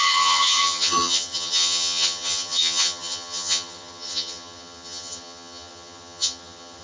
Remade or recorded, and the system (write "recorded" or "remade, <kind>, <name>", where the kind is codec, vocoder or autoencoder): remade, vocoder, HiFi-GAN